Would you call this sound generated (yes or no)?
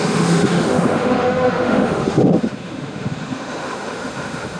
yes